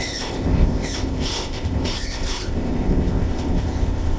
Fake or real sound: fake